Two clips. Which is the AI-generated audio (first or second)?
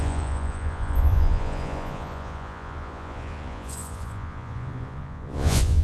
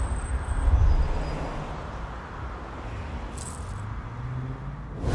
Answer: first